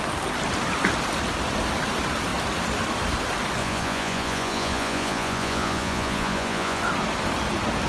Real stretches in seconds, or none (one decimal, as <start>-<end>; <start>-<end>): 0.0-3.6; 6.8-7.9